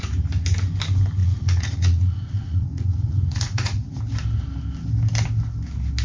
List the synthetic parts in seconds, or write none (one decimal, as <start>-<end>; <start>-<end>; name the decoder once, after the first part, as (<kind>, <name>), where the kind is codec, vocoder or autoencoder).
1.2-4.0 (vocoder, Vocos)